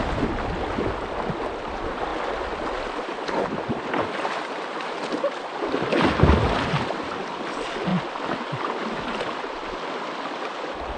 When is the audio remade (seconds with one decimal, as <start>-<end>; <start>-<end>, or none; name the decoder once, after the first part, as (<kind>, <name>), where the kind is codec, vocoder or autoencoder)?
none